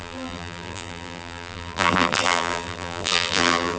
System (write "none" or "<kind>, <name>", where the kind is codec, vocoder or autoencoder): vocoder, BigVGAN v2